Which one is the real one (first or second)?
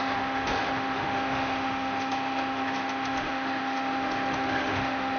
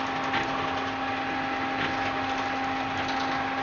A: second